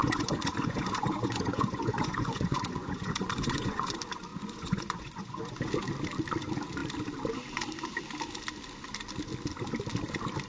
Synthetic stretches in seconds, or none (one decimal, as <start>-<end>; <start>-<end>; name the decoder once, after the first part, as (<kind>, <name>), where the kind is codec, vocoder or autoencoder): 0.0-3.9 (vocoder, Vocos); 4.3-5.7